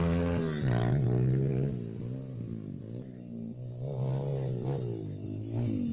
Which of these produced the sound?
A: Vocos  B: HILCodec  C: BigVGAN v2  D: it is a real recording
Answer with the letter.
D